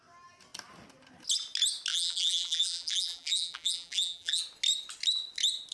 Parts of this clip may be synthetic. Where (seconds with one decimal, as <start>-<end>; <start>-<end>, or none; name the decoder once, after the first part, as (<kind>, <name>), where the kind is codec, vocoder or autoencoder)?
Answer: 1.9-4.4 (vocoder, BigVGAN v2)